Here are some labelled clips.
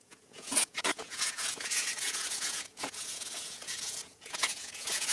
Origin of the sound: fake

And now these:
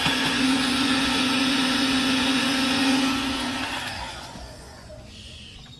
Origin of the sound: fake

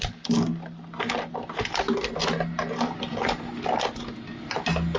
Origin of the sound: real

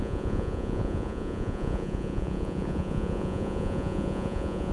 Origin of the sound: fake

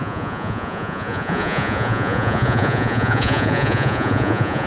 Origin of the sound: fake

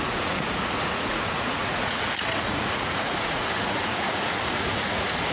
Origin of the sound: fake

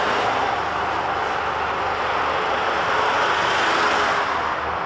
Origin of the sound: real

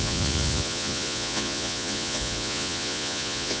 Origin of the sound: fake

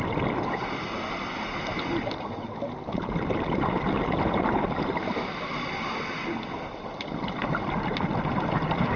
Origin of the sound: real